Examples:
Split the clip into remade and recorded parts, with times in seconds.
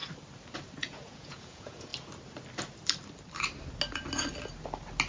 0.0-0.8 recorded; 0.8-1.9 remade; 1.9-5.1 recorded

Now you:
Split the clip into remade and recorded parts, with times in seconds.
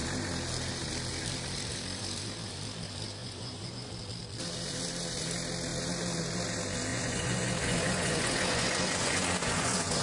0.0-3.2 recorded; 3.2-3.9 remade; 3.9-6.9 recorded; 6.9-10.0 remade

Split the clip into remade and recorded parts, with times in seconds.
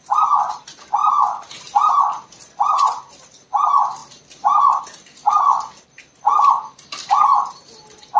0.0-8.2 recorded